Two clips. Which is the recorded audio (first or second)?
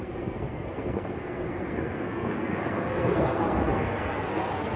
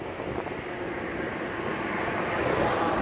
second